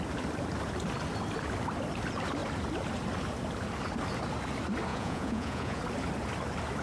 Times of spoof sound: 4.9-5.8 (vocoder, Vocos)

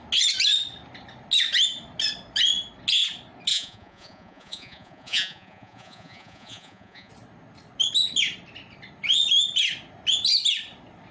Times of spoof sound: 3.5-7.1 (vocoder, Vocos)

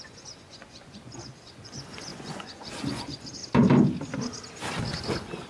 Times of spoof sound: 0.0-3.4 (vocoder, Vocos); 4.8-5.5